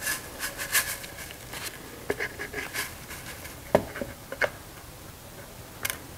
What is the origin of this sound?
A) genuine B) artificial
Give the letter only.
A